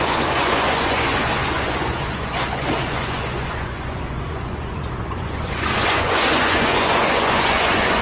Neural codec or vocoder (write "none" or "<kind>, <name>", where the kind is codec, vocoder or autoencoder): vocoder, Vocos